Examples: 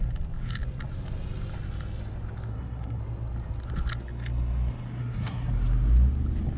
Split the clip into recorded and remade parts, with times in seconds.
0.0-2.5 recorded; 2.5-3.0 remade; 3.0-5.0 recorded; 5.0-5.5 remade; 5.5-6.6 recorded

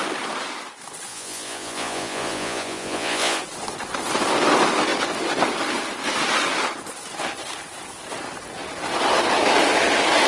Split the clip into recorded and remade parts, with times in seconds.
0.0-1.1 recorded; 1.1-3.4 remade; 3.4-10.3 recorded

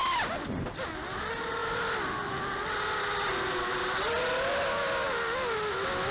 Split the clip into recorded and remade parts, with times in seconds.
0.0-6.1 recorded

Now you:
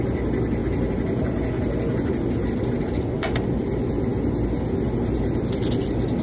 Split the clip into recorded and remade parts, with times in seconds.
0.0-6.2 recorded

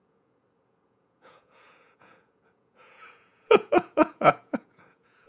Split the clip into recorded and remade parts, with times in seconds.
0.0-5.3 remade

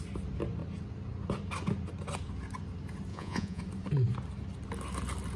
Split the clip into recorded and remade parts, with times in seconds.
0.0-3.1 recorded; 3.1-3.6 remade; 3.6-5.4 recorded

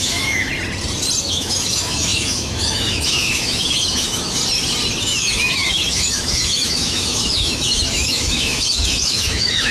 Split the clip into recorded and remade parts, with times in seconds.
0.0-0.5 remade; 0.5-1.2 recorded; 1.2-4.4 remade; 4.4-5.0 recorded; 5.0-9.7 remade

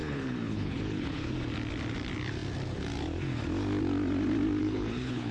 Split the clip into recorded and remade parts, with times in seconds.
0.0-1.3 remade; 1.3-4.6 recorded; 4.6-5.3 remade